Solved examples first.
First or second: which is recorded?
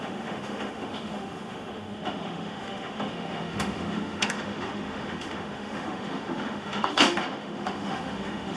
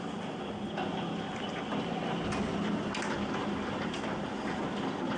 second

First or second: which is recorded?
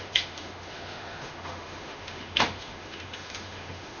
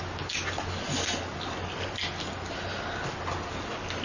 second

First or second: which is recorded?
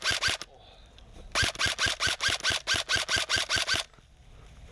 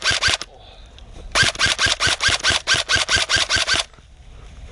first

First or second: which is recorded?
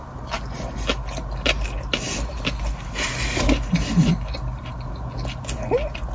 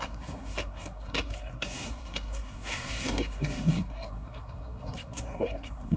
first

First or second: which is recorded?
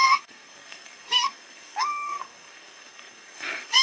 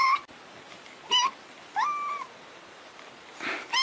second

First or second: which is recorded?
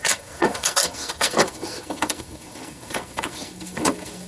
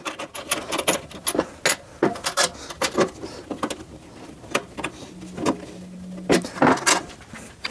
second